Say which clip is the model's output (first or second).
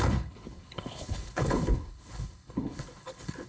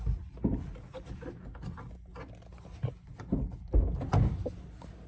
first